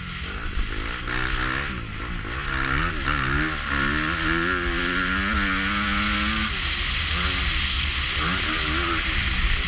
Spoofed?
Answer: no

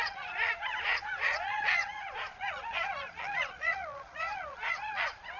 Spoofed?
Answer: yes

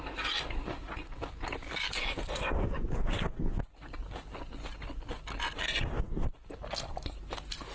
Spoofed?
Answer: no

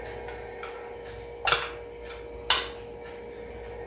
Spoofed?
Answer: no